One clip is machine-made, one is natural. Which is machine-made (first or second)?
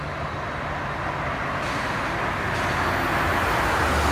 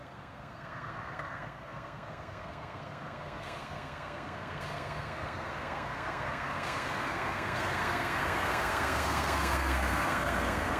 second